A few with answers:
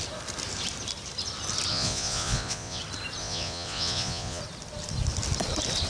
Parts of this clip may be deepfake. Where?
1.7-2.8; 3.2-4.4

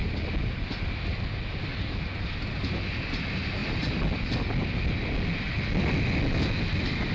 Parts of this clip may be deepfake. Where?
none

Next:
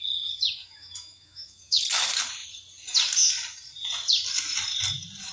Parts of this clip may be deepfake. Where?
0.6-1.8

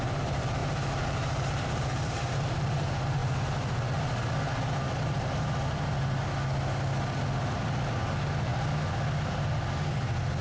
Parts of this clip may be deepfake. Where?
0.0-3.2; 7.9-8.5